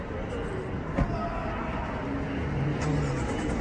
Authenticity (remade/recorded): recorded